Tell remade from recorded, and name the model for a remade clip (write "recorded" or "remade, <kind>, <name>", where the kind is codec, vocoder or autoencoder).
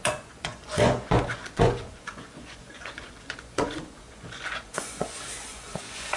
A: remade, vocoder, Vocos